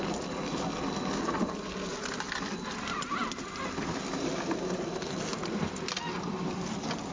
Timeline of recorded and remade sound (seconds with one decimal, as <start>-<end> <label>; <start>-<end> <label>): 0.0-7.1 recorded